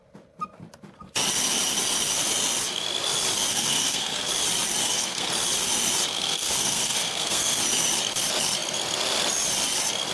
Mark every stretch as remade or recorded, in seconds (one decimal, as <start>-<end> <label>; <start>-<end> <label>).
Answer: 0.0-3.5 recorded; 3.5-4.3 remade; 4.3-4.8 recorded; 4.8-5.3 remade; 5.3-6.0 recorded; 6.0-7.6 remade; 7.6-10.1 recorded